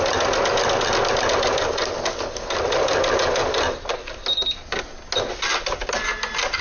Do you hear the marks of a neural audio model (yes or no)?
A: no